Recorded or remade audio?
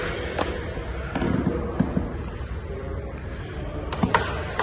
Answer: recorded